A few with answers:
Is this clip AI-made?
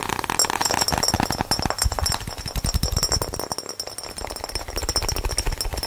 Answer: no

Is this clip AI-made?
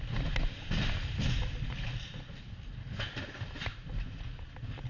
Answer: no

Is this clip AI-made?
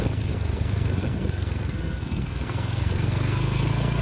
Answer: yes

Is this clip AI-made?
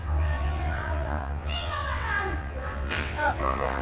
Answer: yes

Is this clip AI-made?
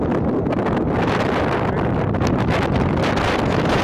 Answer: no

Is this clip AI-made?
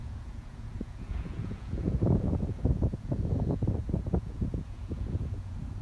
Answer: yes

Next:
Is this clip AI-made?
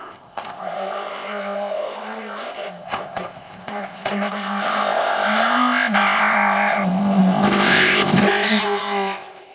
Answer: yes